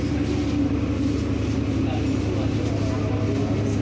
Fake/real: real